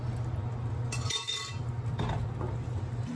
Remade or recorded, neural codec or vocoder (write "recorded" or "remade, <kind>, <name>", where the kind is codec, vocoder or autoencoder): recorded